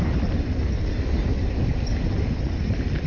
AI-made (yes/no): no